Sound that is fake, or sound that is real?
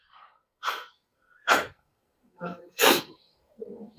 fake